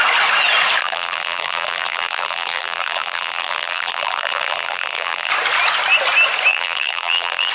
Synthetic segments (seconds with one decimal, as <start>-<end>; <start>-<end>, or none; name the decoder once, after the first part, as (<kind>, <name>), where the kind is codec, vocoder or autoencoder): 0.8-5.3 (vocoder, BigVGAN v2); 6.5-7.5